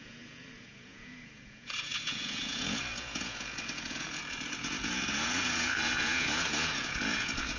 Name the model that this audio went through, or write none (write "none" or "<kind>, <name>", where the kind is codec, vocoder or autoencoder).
vocoder, Vocos